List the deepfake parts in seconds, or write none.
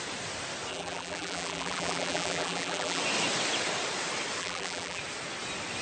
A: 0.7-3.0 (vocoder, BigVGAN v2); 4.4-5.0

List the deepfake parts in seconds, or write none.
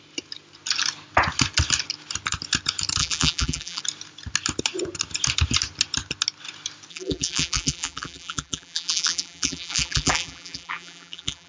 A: 3.0-3.8 (vocoder, BigVGAN v2); 6.9-11.5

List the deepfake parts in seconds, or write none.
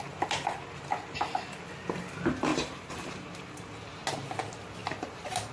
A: 2.5-3.6 (vocoder, BigVGAN v2); 4.8-5.5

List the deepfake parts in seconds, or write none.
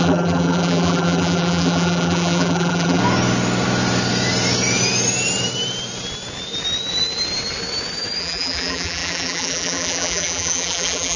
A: 0.0-3.0 (vocoder, BigVGAN v2); 8.2-11.2